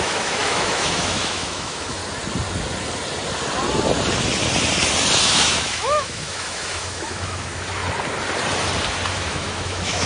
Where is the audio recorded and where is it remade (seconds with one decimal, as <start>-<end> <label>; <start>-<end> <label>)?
0.0-2.0 remade; 2.0-5.2 recorded; 5.2-7.8 remade; 7.8-9.1 recorded; 9.1-10.1 remade